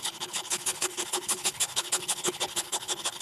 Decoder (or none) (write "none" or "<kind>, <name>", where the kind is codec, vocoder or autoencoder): codec, HILCodec